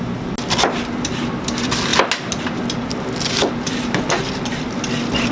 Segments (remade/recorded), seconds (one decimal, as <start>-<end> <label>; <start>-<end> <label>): 0.0-5.3 recorded